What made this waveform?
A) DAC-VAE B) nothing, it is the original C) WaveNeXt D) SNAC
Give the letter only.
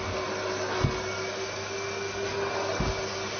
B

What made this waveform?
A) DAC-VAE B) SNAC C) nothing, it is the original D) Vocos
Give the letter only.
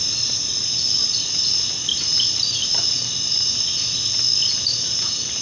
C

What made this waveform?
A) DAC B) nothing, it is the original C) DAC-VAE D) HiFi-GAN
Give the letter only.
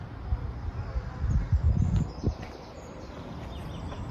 B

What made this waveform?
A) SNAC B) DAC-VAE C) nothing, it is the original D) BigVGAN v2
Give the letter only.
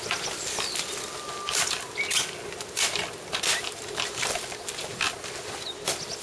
C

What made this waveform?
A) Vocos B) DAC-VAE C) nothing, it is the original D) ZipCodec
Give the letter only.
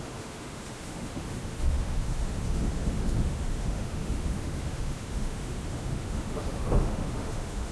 B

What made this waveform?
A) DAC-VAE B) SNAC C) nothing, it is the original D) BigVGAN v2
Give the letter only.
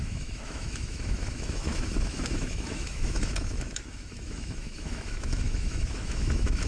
A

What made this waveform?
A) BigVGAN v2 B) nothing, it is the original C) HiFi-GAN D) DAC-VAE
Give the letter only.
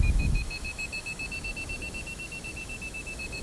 D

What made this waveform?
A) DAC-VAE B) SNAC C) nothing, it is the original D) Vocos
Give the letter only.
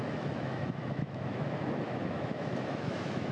A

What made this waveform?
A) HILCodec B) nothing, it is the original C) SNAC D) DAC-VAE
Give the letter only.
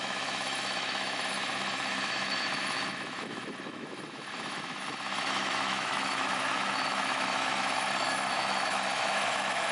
D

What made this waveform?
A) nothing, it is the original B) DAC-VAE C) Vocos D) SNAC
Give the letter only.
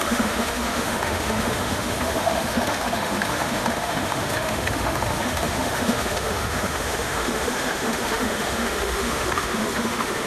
B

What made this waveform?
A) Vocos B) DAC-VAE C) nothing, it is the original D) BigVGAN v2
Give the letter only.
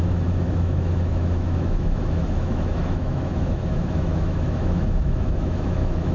B